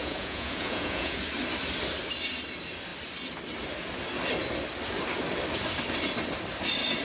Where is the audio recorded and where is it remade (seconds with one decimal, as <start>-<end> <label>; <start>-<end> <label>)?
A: 0.0-1.2 remade; 1.2-7.0 recorded